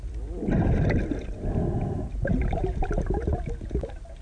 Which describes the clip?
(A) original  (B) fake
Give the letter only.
A